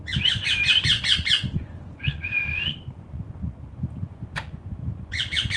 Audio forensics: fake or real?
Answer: fake